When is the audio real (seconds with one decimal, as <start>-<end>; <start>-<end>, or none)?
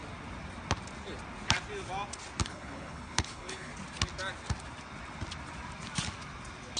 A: 0.0-2.4; 3.7-6.8